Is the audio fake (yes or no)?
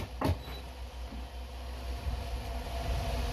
no